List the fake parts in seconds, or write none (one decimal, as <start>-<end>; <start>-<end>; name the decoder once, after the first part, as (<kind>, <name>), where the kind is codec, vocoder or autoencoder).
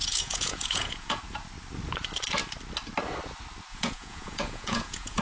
0.0-1.2 (vocoder, Vocos); 3.7-5.2